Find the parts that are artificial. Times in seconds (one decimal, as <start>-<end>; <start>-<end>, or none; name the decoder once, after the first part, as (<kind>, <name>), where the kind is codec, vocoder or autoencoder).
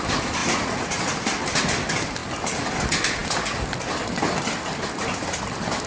0.4-1.0 (vocoder, Vocos)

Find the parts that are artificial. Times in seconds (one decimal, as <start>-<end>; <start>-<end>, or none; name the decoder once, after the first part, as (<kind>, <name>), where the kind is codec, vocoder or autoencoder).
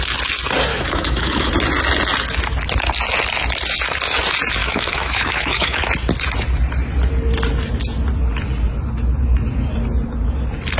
0.7-1.5 (autoencoder, DAC-VAE); 4.6-5.8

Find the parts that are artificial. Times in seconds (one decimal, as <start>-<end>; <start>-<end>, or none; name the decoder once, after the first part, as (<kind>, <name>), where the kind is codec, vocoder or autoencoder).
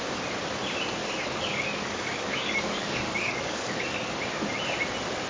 1.0-4.2 (codec, DAC)